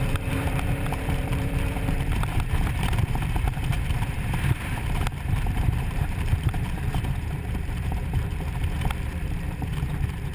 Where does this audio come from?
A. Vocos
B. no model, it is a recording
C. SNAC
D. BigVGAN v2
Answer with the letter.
D